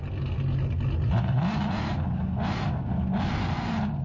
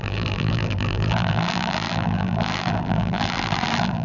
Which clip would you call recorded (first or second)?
first